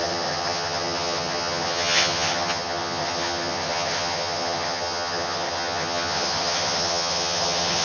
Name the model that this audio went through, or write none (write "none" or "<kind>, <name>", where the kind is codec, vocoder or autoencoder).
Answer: vocoder, HiFi-GAN